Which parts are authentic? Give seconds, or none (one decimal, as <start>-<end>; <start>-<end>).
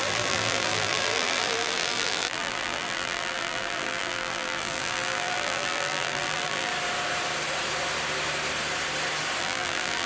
6.7-9.4